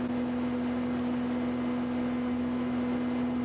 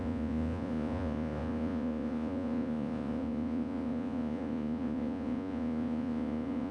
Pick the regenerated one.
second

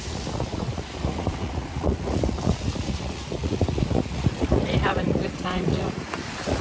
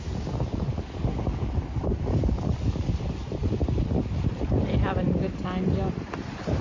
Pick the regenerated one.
first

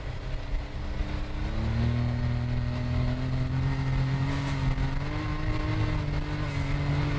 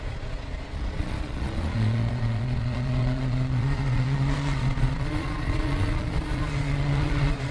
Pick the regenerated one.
second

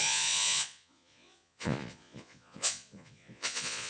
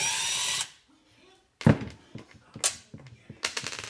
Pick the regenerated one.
first